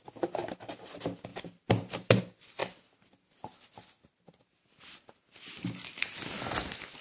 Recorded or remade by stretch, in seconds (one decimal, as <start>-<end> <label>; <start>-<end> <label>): 0.0-1.3 recorded; 1.3-2.2 remade; 2.2-7.0 recorded